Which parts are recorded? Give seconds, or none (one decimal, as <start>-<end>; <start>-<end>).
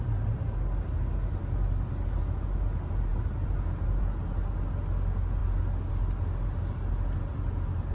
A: 0.0-7.9